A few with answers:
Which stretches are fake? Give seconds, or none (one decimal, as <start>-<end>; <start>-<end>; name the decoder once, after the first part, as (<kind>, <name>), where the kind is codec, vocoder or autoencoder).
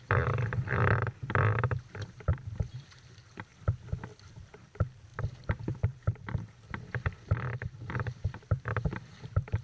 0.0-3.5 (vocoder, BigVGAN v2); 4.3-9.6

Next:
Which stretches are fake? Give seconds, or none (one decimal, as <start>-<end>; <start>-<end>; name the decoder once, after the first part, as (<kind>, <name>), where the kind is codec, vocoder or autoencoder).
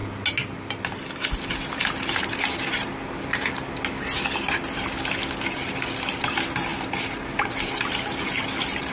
none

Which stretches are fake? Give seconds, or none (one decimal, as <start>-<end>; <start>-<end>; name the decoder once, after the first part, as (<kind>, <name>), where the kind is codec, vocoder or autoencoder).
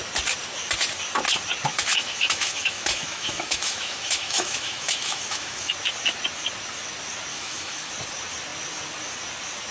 1.7-5.7 (autoencoder, DAC-VAE); 7.3-7.9